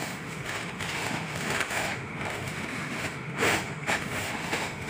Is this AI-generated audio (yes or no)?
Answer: yes